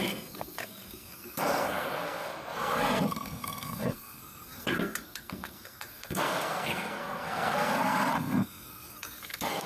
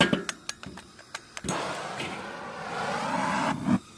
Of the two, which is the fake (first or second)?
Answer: first